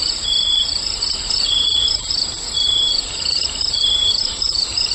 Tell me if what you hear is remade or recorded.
remade